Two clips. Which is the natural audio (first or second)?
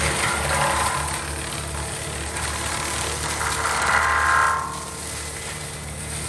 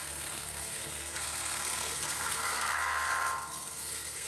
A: first